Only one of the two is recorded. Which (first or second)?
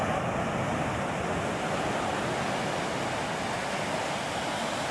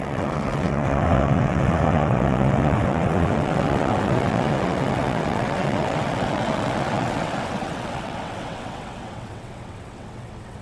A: first